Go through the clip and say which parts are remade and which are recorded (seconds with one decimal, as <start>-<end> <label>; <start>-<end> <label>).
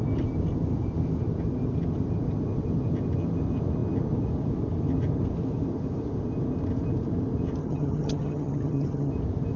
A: 0.0-7.6 recorded; 7.6-9.1 remade; 9.1-9.6 recorded